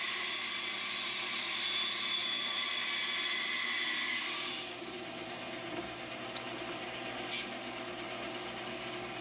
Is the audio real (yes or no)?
yes